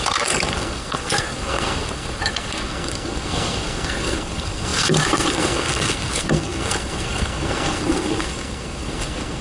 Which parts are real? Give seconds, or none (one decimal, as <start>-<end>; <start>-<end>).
none